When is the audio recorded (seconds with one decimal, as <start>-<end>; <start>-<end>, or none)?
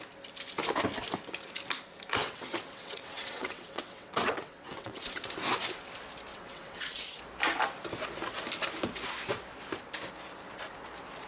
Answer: 0.0-2.2; 5.2-6.3; 7.2-11.3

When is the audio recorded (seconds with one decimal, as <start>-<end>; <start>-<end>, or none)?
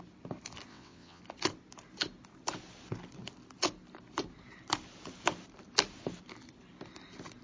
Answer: 0.0-0.7; 1.2-7.4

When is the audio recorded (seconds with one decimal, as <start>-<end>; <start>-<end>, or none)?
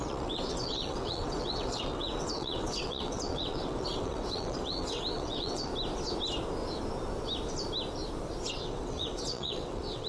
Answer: 5.7-8.5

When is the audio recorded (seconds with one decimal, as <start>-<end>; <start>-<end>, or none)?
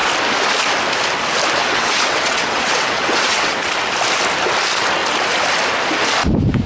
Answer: 0.0-1.6; 3.7-6.7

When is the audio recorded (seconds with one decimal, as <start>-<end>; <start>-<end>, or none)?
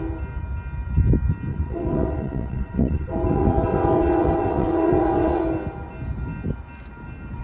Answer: 0.0-1.5; 5.4-7.4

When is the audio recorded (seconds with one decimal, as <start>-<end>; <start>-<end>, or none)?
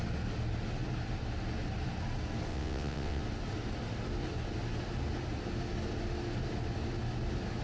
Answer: 0.0-2.5; 3.2-7.6